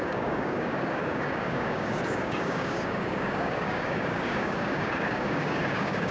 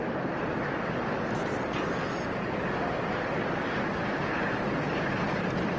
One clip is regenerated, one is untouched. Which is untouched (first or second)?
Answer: second